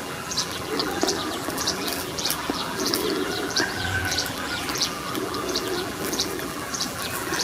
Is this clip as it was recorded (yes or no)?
no